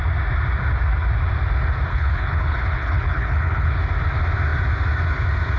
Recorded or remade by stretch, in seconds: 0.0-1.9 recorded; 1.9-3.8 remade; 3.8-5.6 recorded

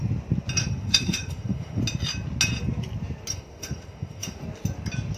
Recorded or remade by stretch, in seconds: 0.0-0.6 recorded; 0.6-1.8 remade; 1.8-3.3 recorded; 3.3-4.4 remade; 4.4-5.2 recorded

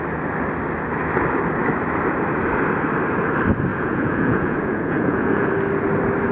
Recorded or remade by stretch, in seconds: 0.0-3.7 recorded; 3.7-5.5 remade; 5.5-6.3 recorded

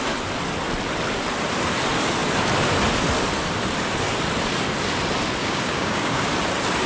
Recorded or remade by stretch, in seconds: 0.0-5.4 recorded; 5.4-6.3 remade; 6.3-6.9 recorded

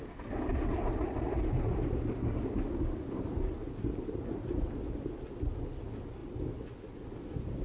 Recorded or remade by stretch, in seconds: 0.0-2.2 recorded; 2.2-3.2 remade; 3.2-7.6 recorded